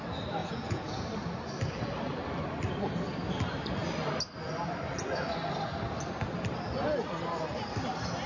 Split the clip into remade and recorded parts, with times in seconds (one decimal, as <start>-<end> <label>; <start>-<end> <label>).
0.0-0.4 recorded; 0.4-1.0 remade; 1.0-8.3 recorded